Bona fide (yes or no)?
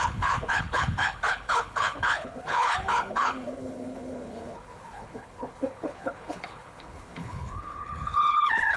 no